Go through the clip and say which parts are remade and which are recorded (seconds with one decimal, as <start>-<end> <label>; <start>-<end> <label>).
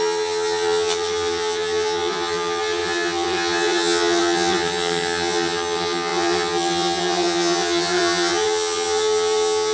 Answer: 0.0-9.7 remade